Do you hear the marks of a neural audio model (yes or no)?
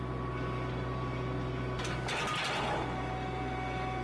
no